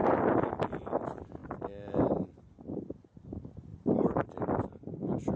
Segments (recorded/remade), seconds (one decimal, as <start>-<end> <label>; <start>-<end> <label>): 0.0-0.5 recorded; 0.5-5.4 remade